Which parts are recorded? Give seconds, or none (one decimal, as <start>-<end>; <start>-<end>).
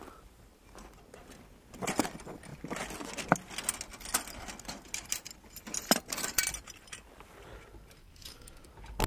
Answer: 0.0-8.0; 8.7-9.1